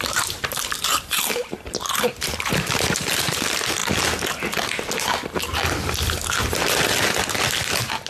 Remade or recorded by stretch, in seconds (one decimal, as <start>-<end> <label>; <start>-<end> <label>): 0.0-3.8 remade; 3.8-8.1 recorded

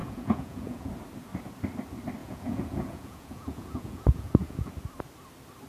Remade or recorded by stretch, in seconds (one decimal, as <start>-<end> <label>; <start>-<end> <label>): 0.0-0.9 remade; 0.9-2.2 recorded; 2.2-4.7 remade; 4.7-5.7 recorded

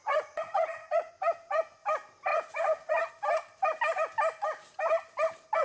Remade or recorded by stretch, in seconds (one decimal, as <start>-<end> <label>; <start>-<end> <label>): 0.0-1.1 remade; 1.1-2.3 recorded; 2.3-3.1 remade; 3.1-5.6 recorded

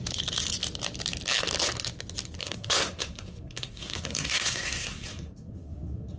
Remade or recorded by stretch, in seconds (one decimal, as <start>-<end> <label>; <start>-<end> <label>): 0.0-2.4 recorded; 2.4-6.2 remade

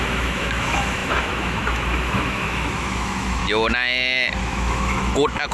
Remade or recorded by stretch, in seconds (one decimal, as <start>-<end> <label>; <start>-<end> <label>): 0.0-3.4 remade; 3.4-4.4 recorded; 4.4-5.5 remade

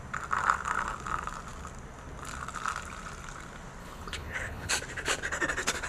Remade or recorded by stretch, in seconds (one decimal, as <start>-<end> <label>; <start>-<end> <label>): 0.0-3.8 recorded; 3.8-4.7 remade; 4.7-5.9 recorded